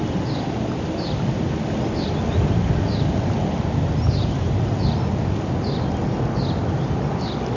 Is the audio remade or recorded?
recorded